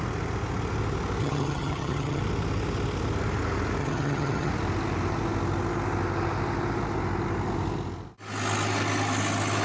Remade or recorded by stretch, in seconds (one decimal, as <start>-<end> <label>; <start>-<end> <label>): 0.0-1.2 recorded; 1.2-2.2 remade; 2.2-3.8 recorded; 3.8-4.5 remade; 4.5-9.6 recorded